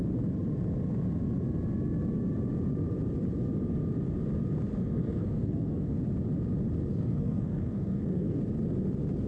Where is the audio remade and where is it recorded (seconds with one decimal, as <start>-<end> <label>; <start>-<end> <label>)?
0.0-4.7 recorded; 4.7-6.0 remade; 6.0-6.9 recorded; 6.9-8.4 remade; 8.4-9.3 recorded